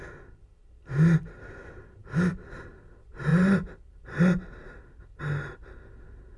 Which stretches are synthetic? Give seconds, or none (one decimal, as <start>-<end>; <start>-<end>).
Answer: none